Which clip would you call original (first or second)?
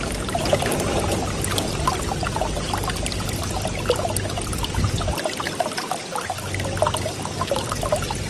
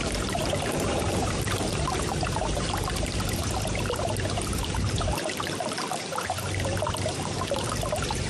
first